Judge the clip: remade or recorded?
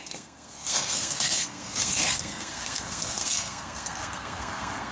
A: remade